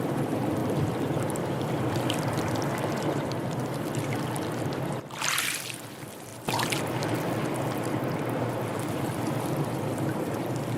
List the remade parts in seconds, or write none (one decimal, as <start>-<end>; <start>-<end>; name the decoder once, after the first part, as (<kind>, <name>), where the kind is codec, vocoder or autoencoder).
0.0-6.3 (vocoder, BigVGAN v2); 8.7-10.8